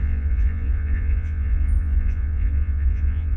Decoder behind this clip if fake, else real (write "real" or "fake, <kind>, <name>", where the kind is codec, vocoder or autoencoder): fake, vocoder, Vocos